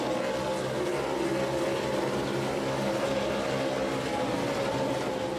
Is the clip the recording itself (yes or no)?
yes